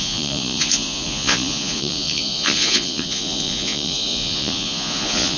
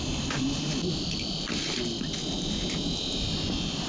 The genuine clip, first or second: second